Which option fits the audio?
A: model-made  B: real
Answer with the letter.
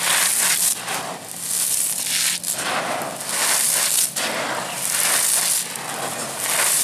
B